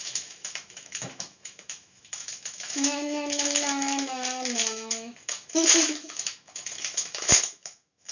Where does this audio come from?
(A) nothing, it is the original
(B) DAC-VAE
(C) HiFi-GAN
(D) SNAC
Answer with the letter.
B